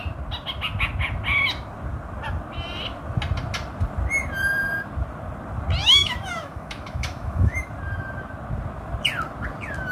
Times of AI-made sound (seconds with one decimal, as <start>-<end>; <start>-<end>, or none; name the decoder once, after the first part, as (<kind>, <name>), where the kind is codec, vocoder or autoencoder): 5.8-7.6 (autoencoder, DAC-VAE)